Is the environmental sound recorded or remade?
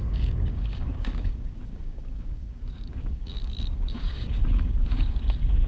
remade